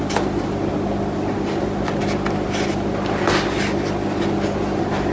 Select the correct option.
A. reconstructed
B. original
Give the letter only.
B